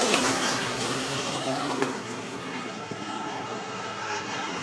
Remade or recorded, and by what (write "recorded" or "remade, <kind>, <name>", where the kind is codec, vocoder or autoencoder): remade, codec, SNAC